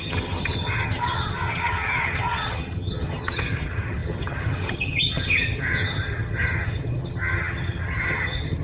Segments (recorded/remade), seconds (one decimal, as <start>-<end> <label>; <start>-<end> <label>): 0.0-8.6 remade